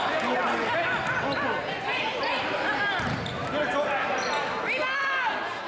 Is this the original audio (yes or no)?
yes